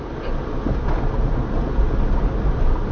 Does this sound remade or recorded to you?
recorded